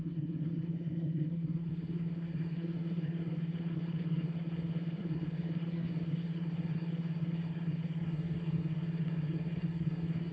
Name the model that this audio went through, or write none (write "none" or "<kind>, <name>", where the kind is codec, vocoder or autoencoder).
codec, SNAC